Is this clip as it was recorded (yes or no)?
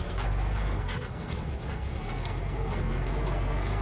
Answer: no